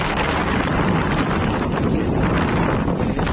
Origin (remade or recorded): recorded